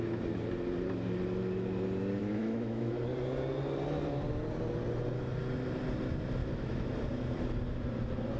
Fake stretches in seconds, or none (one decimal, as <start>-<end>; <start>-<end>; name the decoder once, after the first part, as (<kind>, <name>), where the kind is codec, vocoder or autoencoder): 2.2-2.9 (autoencoder, DAC-VAE); 6.4-6.9